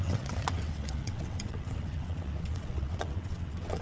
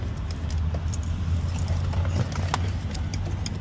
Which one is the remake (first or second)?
first